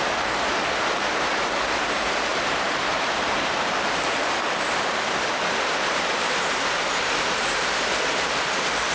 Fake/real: fake